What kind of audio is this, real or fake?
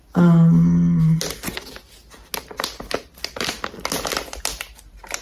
real